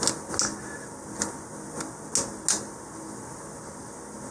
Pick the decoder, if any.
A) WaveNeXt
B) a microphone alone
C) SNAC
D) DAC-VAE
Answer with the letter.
B